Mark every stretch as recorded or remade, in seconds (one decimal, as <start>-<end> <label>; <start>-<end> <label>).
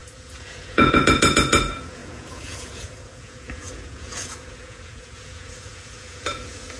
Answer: 0.0-6.8 remade